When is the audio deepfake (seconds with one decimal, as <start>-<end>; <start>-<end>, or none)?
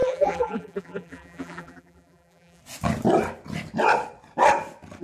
0.0-2.6